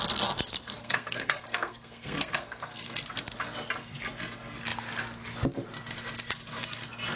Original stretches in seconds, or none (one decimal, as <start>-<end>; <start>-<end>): 0.0-0.8; 3.2-7.2